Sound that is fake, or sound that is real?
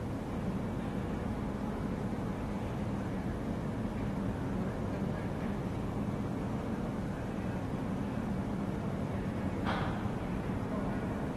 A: real